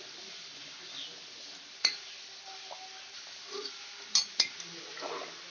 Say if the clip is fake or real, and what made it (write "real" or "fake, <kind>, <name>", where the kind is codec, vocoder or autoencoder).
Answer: real